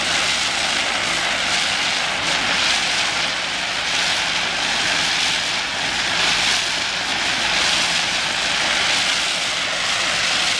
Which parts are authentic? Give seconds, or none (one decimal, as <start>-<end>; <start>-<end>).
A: none